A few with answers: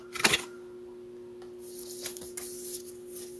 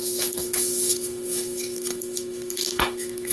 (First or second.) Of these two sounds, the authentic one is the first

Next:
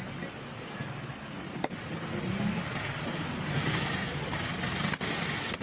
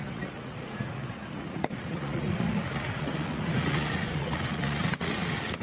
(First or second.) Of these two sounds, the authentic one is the first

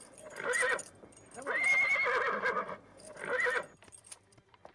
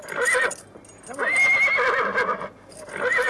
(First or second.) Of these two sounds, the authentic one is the second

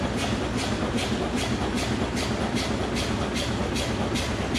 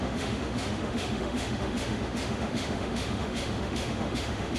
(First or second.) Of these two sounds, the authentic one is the first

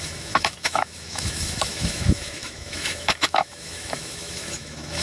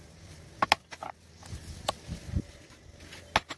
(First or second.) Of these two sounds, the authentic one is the second